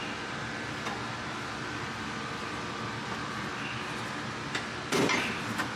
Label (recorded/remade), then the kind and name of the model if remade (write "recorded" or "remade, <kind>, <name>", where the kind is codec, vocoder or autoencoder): recorded